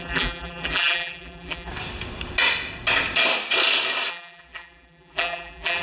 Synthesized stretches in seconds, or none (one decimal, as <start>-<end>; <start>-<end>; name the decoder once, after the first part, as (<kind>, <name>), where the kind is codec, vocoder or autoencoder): 0.0-1.7 (vocoder, BigVGAN v2); 4.1-5.8